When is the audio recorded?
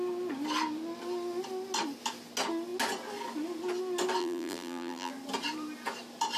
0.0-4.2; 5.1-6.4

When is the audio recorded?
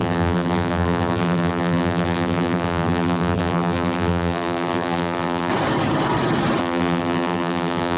5.5-6.6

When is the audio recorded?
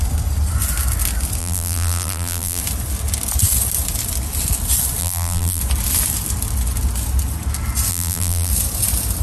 0.0-1.4; 2.6-5.0; 5.6-7.9; 8.5-9.2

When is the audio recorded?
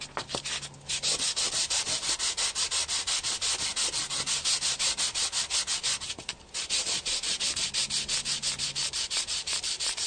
0.0-8.8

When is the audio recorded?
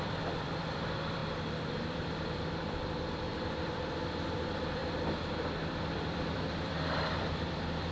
1.2-1.7; 4.8-5.9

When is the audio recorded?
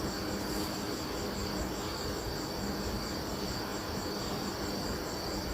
0.0-1.4; 2.1-5.5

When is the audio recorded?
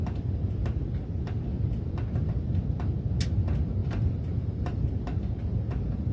0.0-3.8; 4.9-6.1